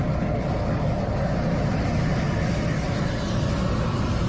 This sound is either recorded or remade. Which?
recorded